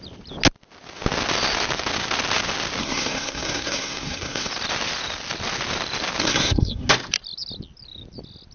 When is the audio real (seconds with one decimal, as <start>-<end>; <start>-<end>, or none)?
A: 0.0-2.8; 4.5-6.2; 6.9-8.5